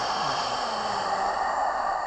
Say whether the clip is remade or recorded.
recorded